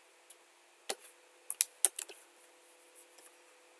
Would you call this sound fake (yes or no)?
no